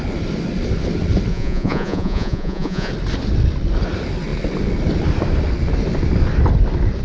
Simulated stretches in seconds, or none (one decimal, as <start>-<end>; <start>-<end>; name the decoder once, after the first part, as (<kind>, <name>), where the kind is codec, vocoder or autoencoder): 1.3-2.9 (vocoder, Vocos)